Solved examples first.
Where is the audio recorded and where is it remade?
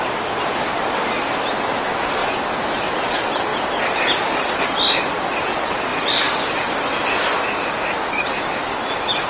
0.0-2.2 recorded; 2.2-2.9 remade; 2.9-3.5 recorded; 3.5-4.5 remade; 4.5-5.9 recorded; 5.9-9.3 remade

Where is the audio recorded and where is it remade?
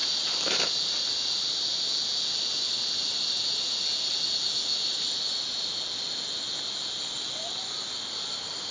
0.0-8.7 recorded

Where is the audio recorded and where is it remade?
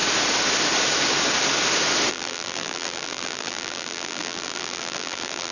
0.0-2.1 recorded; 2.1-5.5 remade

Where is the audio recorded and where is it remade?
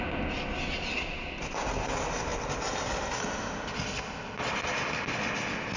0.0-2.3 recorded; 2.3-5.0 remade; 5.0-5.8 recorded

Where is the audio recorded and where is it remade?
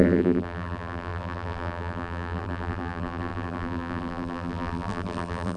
0.0-5.6 remade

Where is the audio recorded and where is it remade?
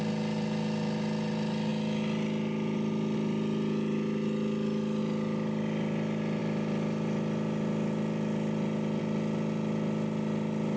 0.0-10.8 recorded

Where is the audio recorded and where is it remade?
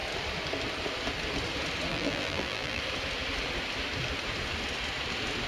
0.0-1.9 recorded; 1.9-2.8 remade; 2.8-5.5 recorded